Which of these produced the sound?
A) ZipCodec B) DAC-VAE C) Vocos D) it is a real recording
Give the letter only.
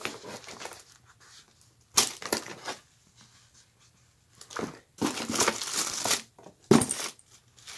D